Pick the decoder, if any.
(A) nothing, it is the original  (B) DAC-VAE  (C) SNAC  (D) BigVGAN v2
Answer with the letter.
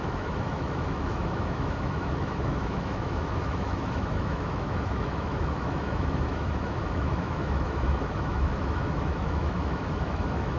B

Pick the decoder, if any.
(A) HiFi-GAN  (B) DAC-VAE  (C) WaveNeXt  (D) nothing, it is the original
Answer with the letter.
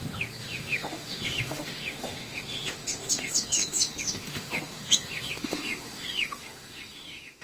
B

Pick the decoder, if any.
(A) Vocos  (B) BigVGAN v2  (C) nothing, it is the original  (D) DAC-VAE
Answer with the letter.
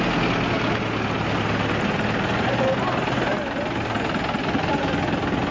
C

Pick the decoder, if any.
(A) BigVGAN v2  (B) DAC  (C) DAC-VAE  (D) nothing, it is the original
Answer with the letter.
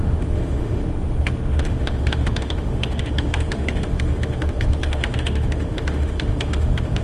C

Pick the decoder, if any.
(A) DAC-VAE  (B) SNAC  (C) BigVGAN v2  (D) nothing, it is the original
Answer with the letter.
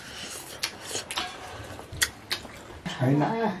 D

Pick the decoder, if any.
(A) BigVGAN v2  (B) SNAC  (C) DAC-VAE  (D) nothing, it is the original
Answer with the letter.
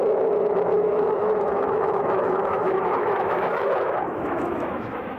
C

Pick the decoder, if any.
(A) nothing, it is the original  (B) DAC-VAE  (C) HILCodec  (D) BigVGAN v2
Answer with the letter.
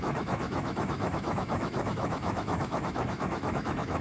B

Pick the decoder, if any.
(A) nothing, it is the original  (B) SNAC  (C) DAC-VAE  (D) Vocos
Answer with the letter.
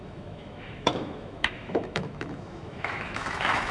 C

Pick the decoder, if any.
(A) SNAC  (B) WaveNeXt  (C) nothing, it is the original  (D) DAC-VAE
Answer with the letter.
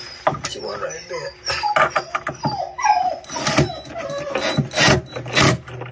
C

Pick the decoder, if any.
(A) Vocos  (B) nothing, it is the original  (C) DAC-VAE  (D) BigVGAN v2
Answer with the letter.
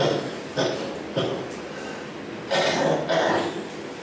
B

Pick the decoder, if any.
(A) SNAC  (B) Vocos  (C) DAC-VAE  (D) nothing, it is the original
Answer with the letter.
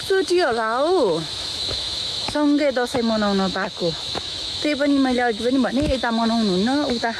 C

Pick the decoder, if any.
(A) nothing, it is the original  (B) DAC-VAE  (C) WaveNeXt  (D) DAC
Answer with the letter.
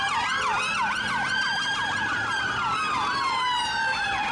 A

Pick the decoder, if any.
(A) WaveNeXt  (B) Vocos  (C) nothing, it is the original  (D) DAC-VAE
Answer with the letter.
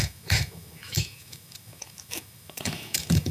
D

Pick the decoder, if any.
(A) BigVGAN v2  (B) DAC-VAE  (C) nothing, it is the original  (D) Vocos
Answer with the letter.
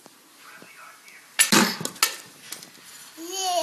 C